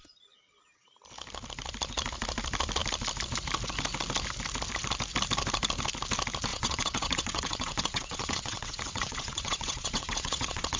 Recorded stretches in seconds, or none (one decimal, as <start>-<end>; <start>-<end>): 0.0-6.5